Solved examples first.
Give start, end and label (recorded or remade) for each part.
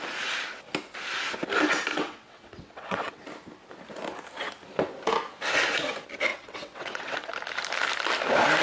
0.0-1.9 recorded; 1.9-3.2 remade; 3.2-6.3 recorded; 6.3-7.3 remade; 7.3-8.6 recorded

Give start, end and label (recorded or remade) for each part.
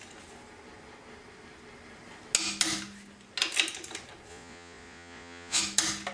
0.0-4.3 recorded; 4.3-5.6 remade; 5.6-6.1 recorded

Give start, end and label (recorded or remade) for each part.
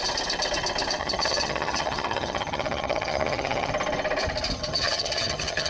0.0-1.0 recorded; 1.0-3.7 remade; 3.7-4.6 recorded; 4.6-5.7 remade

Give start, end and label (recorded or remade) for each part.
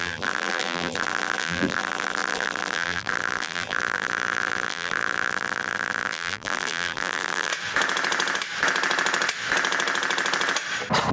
0.0-7.5 remade; 7.5-11.1 recorded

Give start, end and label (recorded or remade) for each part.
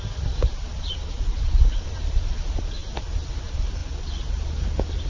0.0-0.7 recorded; 0.7-2.2 remade; 2.2-3.8 recorded; 3.8-4.3 remade; 4.3-5.1 recorded